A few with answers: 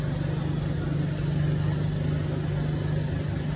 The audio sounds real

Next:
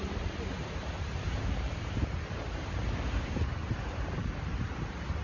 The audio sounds fake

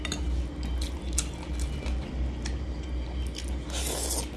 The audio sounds real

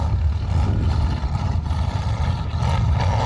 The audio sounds real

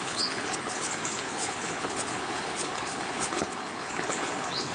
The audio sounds fake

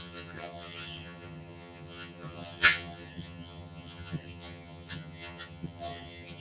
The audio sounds fake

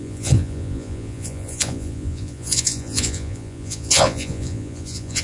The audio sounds fake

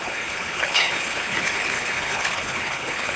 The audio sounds fake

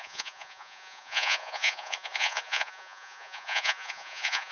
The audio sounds fake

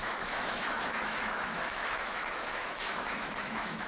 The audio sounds fake